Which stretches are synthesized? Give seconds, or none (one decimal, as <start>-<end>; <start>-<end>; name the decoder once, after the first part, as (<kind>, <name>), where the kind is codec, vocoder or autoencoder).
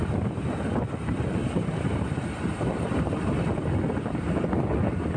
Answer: 1.4-3.2 (vocoder, BigVGAN v2)